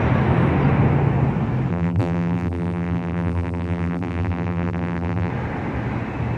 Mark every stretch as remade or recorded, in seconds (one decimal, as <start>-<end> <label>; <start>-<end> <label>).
0.0-1.7 recorded; 1.7-5.3 remade; 5.3-6.4 recorded